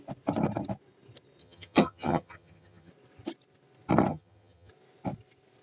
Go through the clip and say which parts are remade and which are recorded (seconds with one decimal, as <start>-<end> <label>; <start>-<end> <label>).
0.0-1.4 recorded; 1.4-2.9 remade; 2.9-4.1 recorded; 4.1-4.7 remade; 4.7-5.6 recorded